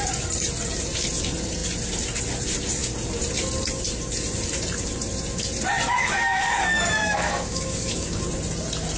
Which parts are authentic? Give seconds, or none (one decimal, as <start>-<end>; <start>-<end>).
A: 0.0-6.0; 8.2-9.0